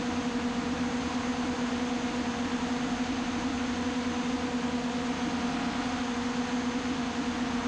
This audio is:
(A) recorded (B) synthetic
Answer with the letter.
A